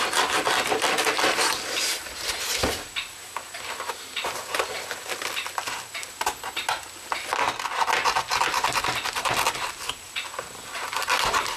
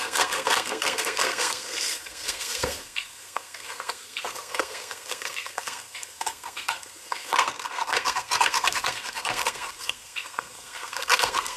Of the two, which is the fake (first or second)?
second